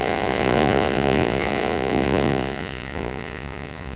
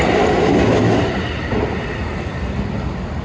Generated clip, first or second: first